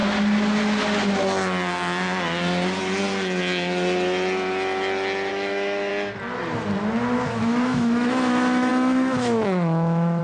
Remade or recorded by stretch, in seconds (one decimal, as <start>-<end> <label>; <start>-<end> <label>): 0.0-5.3 recorded; 5.3-5.9 remade; 5.9-7.4 recorded; 7.4-10.2 remade